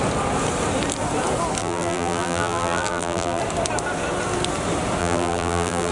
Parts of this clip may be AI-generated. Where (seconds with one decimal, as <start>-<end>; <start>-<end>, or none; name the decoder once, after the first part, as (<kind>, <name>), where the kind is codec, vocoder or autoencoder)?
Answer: 1.6-3.4 (vocoder, BigVGAN v2); 5.0-5.9